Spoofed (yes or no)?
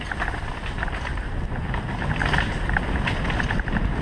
no